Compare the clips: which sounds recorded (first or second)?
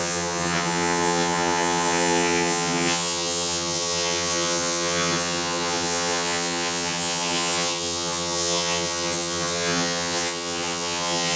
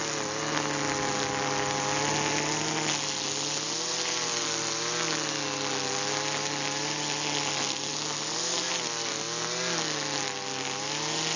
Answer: second